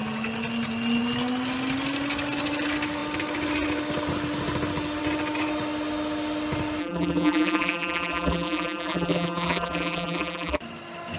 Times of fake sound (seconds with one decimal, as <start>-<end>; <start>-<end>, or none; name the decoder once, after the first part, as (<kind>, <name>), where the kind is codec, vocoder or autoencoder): 6.8-10.6 (vocoder, BigVGAN v2)

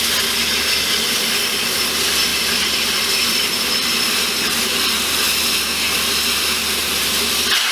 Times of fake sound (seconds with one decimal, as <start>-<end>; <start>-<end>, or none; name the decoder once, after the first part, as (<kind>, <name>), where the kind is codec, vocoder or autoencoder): 2.3-5.4 (vocoder, BigVGAN v2); 6.8-7.7

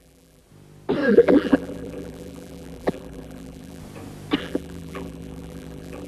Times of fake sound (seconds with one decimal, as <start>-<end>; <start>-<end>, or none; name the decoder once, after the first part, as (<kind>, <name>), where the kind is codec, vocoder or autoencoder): 0.0-0.4 (vocoder, BigVGAN v2); 1.1-3.8; 4.4-6.1